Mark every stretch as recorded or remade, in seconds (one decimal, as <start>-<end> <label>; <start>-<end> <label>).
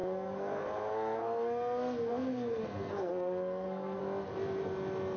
0.0-4.0 remade; 4.0-5.2 recorded